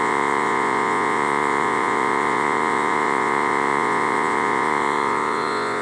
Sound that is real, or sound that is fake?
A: fake